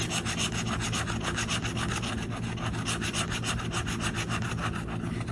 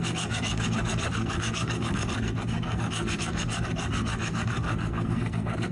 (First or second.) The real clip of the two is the first